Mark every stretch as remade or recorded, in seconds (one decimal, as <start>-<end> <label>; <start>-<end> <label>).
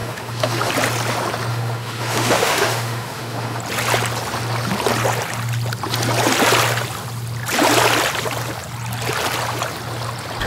0.0-0.7 remade; 0.7-1.5 recorded; 1.5-3.6 remade; 3.6-10.5 recorded